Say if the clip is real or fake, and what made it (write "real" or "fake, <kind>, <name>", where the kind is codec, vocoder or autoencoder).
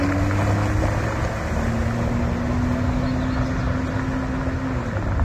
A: real